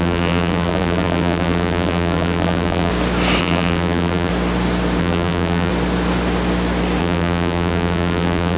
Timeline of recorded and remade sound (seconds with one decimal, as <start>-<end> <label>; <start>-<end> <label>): 0.0-2.9 remade; 2.9-3.4 recorded; 3.4-4.3 remade; 4.3-5.0 recorded; 5.0-5.7 remade; 5.7-7.0 recorded; 7.0-8.6 remade